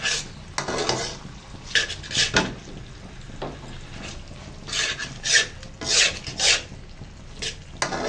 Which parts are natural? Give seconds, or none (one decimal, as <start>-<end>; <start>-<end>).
0.0-8.1